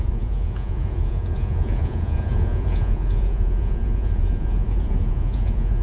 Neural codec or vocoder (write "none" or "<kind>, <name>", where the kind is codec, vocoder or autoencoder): vocoder, Vocos